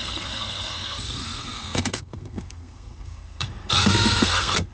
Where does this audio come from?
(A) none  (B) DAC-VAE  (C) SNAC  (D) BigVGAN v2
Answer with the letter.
C